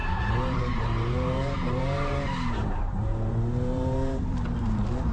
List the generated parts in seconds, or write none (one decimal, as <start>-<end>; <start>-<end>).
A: 0.0-5.1